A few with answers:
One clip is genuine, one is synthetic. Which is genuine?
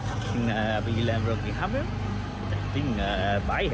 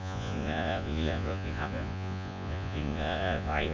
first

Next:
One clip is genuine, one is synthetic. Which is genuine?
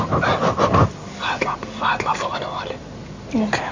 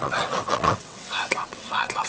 first